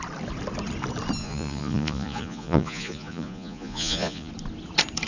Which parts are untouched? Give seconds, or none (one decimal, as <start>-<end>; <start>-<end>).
0.0-1.2; 4.3-5.1